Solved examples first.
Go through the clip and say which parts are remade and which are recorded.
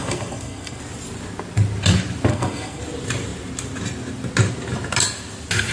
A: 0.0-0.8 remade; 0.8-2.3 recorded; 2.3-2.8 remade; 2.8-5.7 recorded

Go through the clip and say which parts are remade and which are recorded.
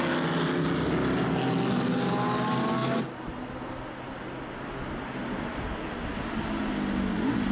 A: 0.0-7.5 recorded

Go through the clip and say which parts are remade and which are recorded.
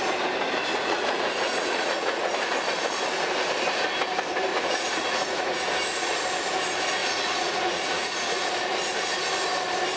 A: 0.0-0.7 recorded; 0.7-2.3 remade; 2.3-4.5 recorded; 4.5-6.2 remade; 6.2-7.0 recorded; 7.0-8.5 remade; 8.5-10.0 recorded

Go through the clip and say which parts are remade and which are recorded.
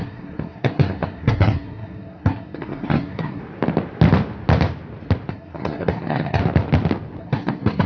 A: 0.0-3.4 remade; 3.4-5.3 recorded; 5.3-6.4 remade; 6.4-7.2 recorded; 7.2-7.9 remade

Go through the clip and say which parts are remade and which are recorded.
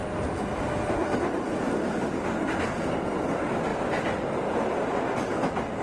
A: 0.0-5.8 recorded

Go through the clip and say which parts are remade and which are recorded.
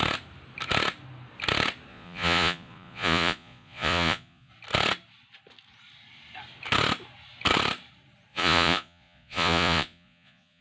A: 0.0-1.9 recorded; 1.9-4.5 remade; 4.5-8.3 recorded; 8.3-10.6 remade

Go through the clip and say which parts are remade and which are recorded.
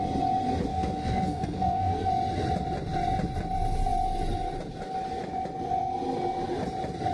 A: 0.0-0.7 recorded; 0.7-2.1 remade; 2.1-7.1 recorded